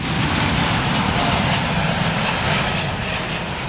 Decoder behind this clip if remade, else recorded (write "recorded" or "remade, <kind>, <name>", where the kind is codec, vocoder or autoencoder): recorded